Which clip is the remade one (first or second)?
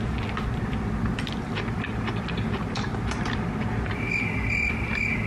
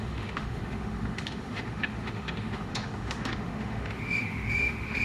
second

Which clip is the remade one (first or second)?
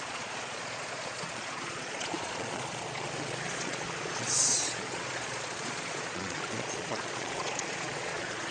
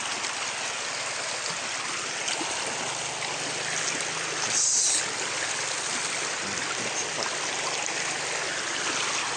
first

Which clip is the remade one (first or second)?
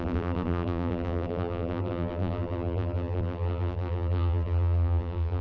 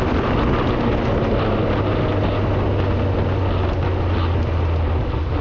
first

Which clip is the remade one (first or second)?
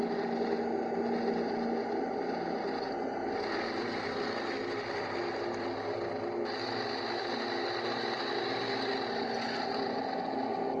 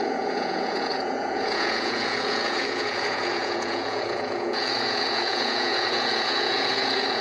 second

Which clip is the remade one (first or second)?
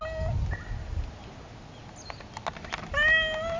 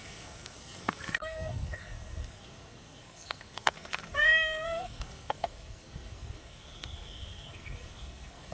second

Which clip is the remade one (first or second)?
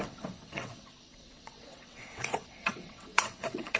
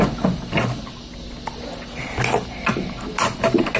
first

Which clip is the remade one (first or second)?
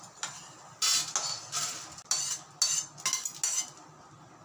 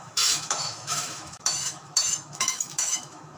second